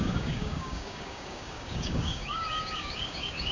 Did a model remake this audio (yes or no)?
yes